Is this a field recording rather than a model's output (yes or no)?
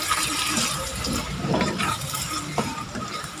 no